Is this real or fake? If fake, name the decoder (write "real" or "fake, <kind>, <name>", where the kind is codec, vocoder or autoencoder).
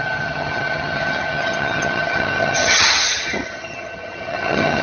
fake, vocoder, HiFi-GAN